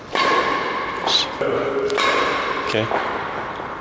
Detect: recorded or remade remade